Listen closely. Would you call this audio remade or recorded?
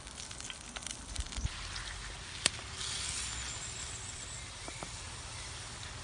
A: remade